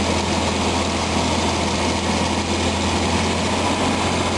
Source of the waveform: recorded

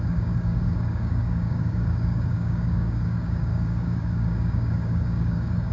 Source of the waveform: remade